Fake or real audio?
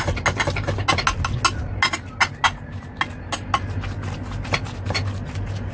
real